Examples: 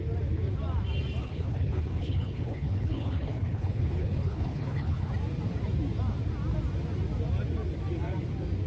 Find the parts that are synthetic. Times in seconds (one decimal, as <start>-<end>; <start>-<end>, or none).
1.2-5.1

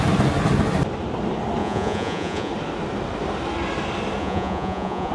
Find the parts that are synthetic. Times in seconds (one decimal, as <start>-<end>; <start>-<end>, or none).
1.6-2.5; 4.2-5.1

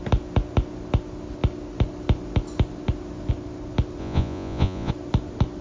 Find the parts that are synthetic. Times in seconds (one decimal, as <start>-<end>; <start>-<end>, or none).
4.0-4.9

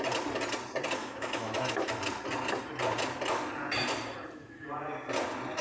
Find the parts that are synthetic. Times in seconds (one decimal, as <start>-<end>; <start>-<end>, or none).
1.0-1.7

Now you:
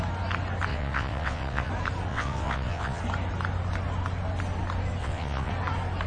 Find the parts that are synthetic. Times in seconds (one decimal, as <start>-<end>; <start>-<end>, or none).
0.7-1.7; 2.1-3.0; 5.0-5.5

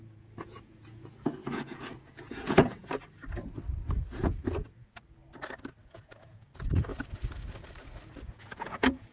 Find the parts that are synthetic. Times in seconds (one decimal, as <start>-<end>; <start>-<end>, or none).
0.0-2.8; 4.1-5.2; 5.8-6.9; 8.2-9.1